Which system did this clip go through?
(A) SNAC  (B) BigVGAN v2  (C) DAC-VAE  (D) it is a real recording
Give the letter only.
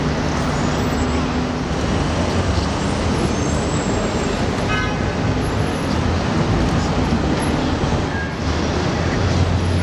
D